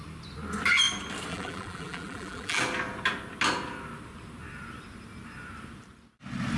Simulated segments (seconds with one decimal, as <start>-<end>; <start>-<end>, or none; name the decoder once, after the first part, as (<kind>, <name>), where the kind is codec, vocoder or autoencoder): 1.3-2.6 (vocoder, BigVGAN v2)